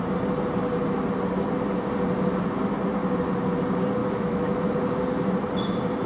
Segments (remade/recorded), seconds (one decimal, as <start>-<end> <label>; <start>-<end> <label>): 0.0-4.0 recorded; 4.0-4.7 remade; 4.7-6.1 recorded